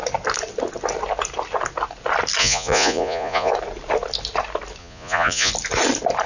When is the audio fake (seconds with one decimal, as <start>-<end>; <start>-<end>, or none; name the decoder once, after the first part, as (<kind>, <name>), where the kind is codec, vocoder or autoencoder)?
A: 2.4-3.5 (vocoder, Vocos); 4.8-5.5